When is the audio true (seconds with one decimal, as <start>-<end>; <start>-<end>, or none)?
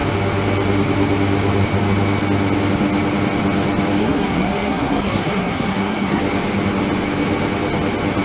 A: 0.0-4.0; 6.2-8.2